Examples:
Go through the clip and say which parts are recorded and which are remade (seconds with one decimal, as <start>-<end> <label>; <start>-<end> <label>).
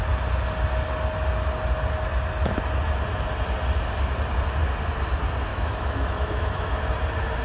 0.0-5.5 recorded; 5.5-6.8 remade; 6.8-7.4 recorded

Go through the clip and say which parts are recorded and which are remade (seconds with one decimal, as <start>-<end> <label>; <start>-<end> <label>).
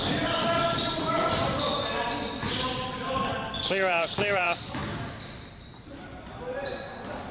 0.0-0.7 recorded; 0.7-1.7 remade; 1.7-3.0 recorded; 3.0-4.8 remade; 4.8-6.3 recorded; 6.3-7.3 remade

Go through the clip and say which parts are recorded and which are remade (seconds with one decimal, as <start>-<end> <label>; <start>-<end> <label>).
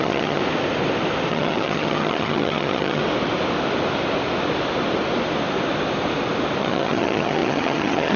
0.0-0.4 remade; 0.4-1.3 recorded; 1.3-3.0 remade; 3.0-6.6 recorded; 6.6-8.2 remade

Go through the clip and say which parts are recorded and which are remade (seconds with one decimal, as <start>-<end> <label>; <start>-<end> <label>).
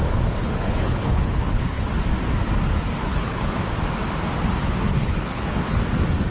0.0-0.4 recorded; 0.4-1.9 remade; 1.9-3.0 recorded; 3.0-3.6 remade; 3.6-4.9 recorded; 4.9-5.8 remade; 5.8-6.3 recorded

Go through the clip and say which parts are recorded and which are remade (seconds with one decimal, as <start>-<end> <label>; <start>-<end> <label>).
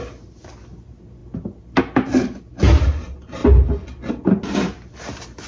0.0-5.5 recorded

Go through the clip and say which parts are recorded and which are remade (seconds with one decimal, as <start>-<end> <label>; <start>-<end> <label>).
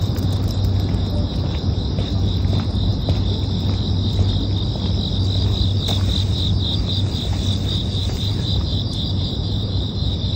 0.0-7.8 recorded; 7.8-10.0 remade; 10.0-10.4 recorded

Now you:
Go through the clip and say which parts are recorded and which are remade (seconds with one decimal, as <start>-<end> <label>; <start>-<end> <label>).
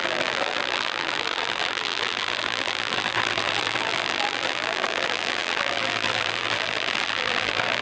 0.0-7.8 remade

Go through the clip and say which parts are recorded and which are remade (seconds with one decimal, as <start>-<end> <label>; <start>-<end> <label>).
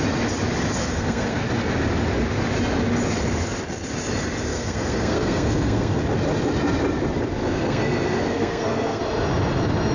0.0-0.8 recorded; 0.8-1.4 remade; 1.4-4.5 recorded; 4.5-6.0 remade; 6.0-7.4 recorded; 7.4-9.0 remade; 9.0-9.9 recorded